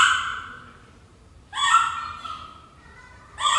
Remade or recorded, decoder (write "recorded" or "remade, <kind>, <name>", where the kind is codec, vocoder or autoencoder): remade, vocoder, BigVGAN v2